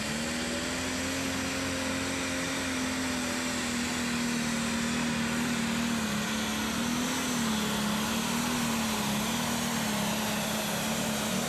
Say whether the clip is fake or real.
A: real